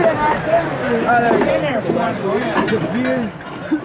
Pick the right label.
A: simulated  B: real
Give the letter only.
B